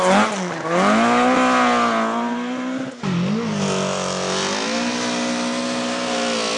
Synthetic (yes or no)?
no